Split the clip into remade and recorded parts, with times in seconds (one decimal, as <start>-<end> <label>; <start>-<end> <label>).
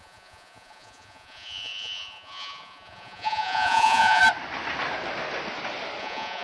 0.0-4.2 remade; 4.2-6.0 recorded; 6.0-6.4 remade